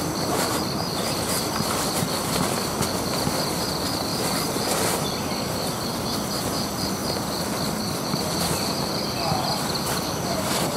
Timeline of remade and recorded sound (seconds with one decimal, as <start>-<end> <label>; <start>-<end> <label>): 0.0-7.0 remade; 7.0-7.7 recorded; 7.7-10.8 remade